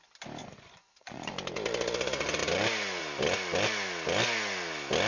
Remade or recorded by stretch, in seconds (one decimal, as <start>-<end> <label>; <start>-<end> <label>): 0.0-0.4 recorded; 0.4-1.3 remade; 1.3-5.1 recorded